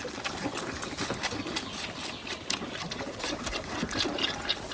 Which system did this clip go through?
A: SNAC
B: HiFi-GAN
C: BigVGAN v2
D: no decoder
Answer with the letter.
D